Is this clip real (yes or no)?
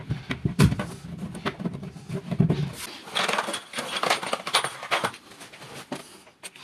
yes